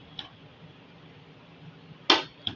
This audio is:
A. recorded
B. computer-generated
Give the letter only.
A